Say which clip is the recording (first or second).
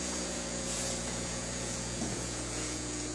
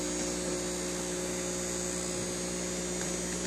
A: second